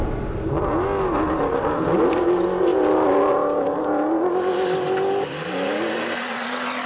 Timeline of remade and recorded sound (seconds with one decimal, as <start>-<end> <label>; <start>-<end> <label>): 0.0-6.9 recorded